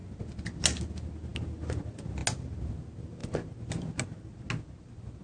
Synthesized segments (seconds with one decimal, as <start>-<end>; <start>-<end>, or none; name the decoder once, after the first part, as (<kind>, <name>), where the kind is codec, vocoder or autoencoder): none